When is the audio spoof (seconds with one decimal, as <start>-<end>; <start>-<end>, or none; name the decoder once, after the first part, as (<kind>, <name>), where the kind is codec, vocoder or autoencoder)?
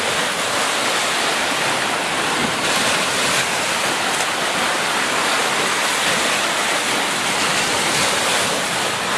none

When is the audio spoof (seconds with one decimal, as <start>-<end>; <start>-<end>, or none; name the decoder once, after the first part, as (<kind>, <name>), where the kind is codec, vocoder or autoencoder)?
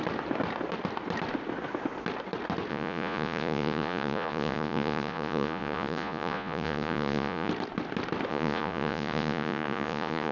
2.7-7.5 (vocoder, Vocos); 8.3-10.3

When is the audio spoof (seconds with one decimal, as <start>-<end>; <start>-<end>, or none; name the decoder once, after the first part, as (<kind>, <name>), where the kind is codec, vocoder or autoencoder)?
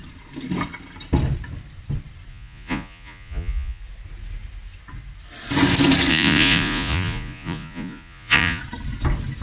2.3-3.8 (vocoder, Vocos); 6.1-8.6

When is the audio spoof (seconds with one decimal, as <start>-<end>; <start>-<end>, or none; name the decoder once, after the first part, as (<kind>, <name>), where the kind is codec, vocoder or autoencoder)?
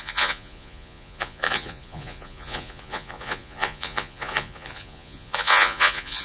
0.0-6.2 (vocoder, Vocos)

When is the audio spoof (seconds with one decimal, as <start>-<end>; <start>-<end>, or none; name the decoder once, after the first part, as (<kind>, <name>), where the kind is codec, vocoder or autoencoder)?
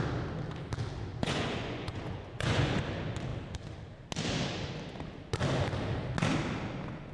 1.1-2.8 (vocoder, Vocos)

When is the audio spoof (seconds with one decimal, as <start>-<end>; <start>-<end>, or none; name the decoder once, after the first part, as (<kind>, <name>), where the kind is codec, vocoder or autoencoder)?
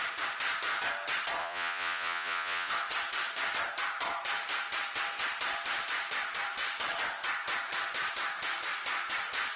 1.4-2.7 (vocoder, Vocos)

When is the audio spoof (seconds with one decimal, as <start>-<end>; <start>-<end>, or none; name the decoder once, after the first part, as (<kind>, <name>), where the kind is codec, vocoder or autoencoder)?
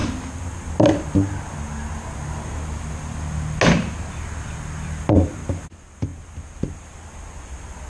none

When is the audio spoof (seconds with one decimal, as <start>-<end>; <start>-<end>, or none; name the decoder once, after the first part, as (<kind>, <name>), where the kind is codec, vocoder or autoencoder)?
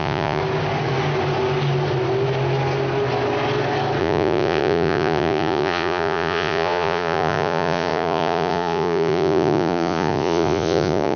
0.0-0.4 (vocoder, Vocos); 4.0-11.2